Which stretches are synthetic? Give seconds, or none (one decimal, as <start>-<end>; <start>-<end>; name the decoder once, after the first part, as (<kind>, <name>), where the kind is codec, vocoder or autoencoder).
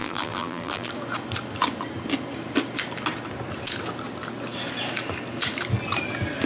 0.0-0.9 (vocoder, BigVGAN v2)